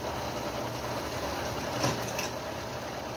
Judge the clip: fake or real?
real